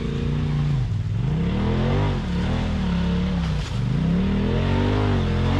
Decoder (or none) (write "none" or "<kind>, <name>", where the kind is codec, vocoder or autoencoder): none